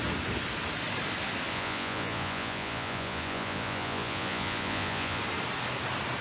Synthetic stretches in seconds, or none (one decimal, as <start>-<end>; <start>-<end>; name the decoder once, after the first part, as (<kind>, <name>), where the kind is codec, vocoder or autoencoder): 1.5-5.2 (vocoder, Vocos)